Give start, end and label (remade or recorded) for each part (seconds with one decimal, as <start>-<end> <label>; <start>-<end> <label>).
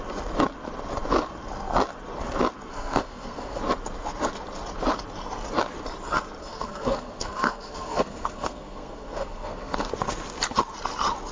0.0-2.7 recorded; 2.7-3.6 remade; 3.6-6.4 recorded; 6.4-9.9 remade; 9.9-11.3 recorded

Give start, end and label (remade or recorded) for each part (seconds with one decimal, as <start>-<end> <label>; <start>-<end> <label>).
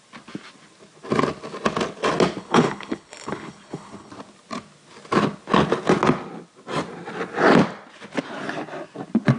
0.0-2.4 recorded; 2.4-4.1 remade; 4.1-9.4 recorded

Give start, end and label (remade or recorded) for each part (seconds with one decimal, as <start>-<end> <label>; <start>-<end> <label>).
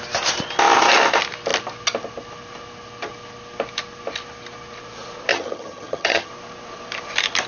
0.0-5.3 recorded; 5.3-6.3 remade; 6.3-7.5 recorded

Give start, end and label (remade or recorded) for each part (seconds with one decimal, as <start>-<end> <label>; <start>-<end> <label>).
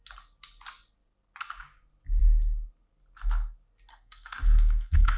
0.0-3.9 recorded; 3.9-5.2 remade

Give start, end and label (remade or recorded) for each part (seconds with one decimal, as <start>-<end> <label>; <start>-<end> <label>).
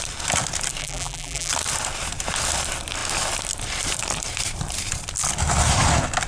0.0-0.8 recorded; 0.8-1.5 remade; 1.5-6.3 recorded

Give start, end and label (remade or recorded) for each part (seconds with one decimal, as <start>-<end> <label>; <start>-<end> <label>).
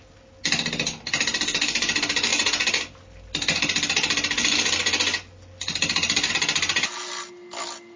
0.0-8.0 recorded